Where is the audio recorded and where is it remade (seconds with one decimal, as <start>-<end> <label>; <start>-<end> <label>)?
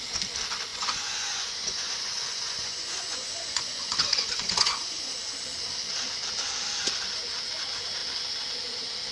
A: 0.0-0.7 recorded; 0.7-5.2 remade; 5.2-9.1 recorded